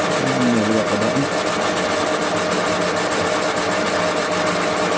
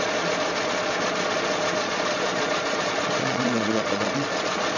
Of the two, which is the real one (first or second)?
first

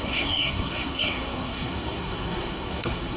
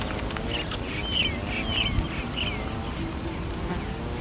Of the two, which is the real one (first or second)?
second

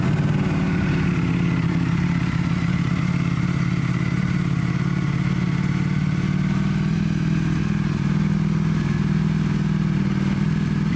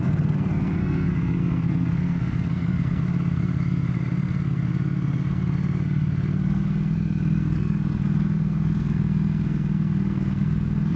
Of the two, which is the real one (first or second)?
first